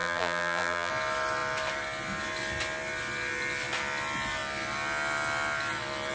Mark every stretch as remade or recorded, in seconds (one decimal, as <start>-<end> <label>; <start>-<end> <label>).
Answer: 0.0-0.9 remade; 0.9-6.1 recorded